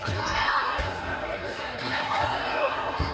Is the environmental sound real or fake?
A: fake